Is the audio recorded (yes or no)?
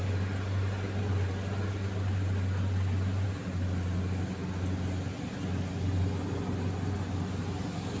yes